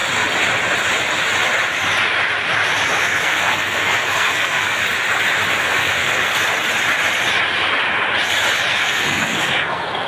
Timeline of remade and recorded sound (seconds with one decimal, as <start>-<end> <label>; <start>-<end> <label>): 0.0-3.0 recorded; 3.0-4.8 remade; 4.8-5.5 recorded; 5.5-6.3 remade; 6.3-8.7 recorded; 8.7-10.1 remade